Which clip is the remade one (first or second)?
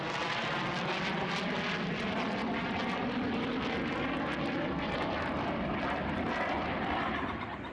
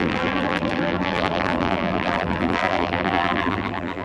second